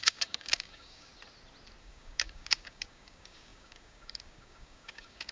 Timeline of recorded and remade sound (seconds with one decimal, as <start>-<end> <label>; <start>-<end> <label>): 0.0-1.1 remade; 1.1-1.8 recorded; 1.8-5.3 remade